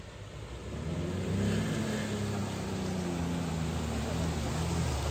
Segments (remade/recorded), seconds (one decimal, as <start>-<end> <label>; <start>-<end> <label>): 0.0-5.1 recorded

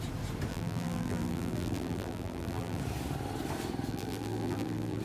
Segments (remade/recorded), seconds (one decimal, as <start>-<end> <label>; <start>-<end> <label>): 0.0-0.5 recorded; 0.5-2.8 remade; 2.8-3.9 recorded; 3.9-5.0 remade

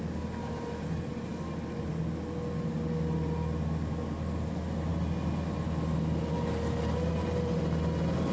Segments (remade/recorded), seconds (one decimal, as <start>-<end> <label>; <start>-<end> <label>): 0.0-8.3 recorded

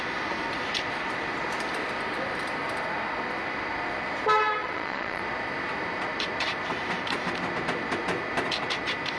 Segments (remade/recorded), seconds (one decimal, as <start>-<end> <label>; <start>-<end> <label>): 0.0-4.6 recorded; 4.6-5.2 remade; 5.2-9.2 recorded

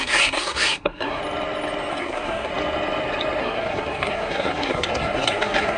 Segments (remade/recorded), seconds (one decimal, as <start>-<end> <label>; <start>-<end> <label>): 0.0-1.2 remade; 1.2-1.9 recorded; 1.9-2.5 remade; 2.5-3.4 recorded; 3.4-5.8 remade